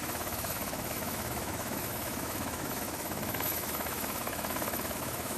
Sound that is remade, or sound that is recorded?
remade